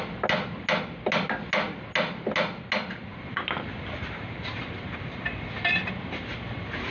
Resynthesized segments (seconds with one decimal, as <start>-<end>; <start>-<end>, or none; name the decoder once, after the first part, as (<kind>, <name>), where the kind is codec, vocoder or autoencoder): 4.0-5.9 (vocoder, BigVGAN v2)